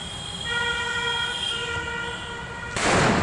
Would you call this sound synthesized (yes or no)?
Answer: no